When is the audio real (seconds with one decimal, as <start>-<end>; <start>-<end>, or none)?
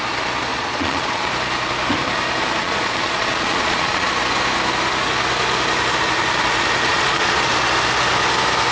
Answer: 0.0-0.5; 1.3-2.6; 4.1-6.9; 7.5-8.7